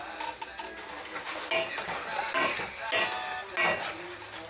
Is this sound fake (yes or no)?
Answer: no